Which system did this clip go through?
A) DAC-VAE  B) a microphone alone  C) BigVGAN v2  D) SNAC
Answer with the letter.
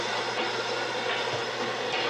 B